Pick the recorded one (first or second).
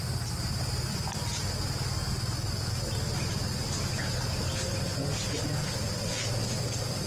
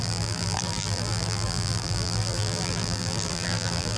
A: first